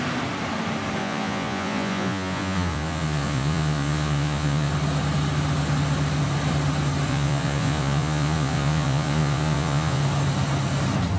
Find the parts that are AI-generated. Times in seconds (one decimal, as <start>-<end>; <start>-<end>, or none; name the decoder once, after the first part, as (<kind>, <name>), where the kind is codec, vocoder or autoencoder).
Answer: 1.0-4.7 (vocoder, Vocos); 7.1-10.0